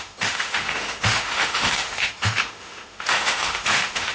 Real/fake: fake